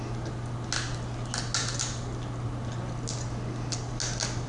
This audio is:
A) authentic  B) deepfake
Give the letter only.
A